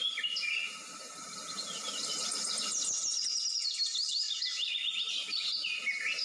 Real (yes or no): yes